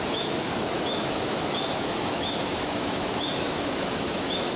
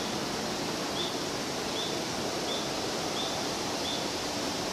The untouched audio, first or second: second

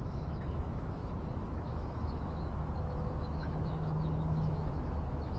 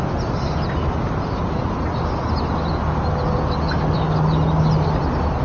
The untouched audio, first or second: second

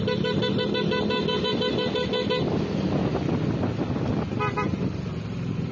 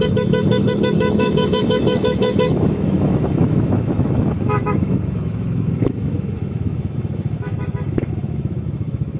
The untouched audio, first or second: first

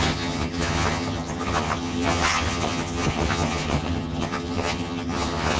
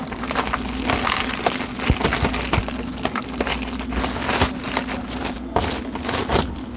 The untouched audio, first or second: second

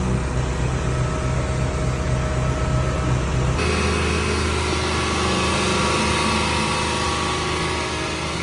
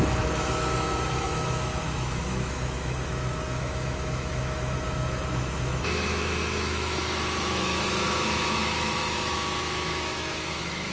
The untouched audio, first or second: first